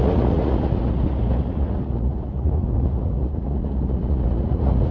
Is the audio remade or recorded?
remade